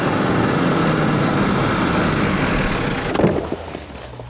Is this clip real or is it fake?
real